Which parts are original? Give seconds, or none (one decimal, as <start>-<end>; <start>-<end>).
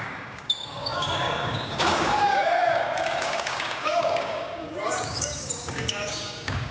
none